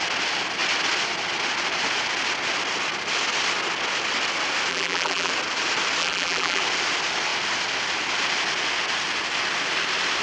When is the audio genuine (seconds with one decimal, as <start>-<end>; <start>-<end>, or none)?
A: 0.0-4.7; 5.3-6.0; 6.6-10.2